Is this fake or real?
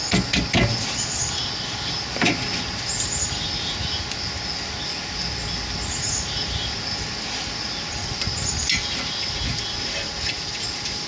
real